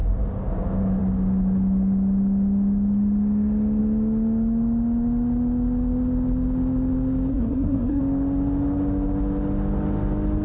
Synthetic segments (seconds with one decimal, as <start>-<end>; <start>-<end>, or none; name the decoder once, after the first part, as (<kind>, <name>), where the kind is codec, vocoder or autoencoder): 7.3-8.0 (codec, SNAC)